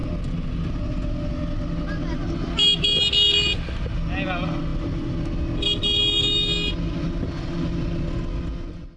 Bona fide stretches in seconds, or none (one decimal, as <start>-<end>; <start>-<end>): 0.0-9.0